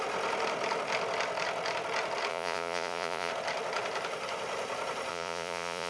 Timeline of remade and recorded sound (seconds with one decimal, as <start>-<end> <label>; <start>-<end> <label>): 0.0-2.3 recorded; 2.3-3.3 remade; 3.3-5.1 recorded; 5.1-5.9 remade